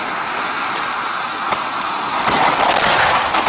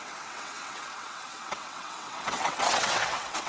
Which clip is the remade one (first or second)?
second